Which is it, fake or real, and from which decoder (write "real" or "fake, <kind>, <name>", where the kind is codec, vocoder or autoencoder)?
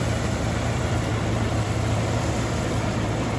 fake, vocoder, BigVGAN v2